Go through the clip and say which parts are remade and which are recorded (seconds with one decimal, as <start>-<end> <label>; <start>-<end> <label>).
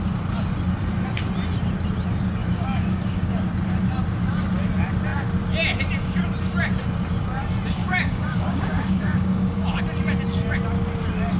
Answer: 0.0-2.4 recorded; 2.4-3.3 remade; 3.3-7.8 recorded; 7.8-9.8 remade; 9.8-11.4 recorded